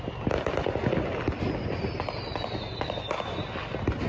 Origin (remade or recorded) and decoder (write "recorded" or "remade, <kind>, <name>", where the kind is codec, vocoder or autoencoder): recorded